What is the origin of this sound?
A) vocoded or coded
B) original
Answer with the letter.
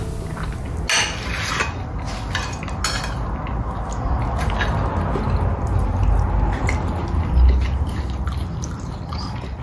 B